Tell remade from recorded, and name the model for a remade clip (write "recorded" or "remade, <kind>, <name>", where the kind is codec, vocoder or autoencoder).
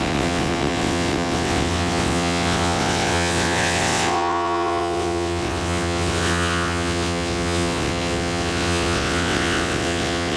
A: remade, vocoder, WaveNeXt